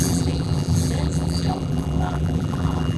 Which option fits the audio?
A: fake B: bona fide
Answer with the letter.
A